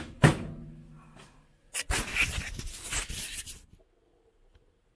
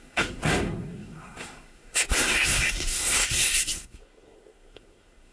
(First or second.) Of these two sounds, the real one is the first